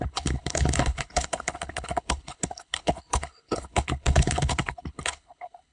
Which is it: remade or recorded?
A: remade